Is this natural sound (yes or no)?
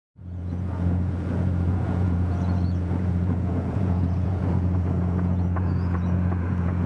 no